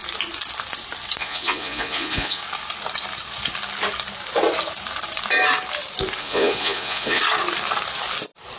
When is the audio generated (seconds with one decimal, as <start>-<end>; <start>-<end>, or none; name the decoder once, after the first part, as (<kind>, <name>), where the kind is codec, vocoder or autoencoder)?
1.2-2.4 (vocoder, Vocos); 6.2-7.2